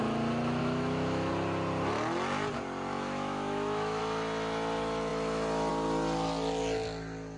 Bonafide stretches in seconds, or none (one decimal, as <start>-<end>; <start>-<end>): 0.0-0.6; 1.3-2.9; 4.0-7.4